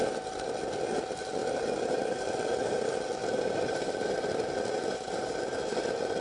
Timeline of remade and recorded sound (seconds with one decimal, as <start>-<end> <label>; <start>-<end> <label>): 0.0-1.4 recorded; 1.4-2.3 remade; 2.3-3.2 recorded; 3.2-5.4 remade; 5.4-6.2 recorded